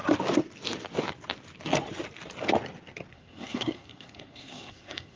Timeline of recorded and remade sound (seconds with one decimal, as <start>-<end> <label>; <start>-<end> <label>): 0.0-3.1 recorded; 3.1-5.2 remade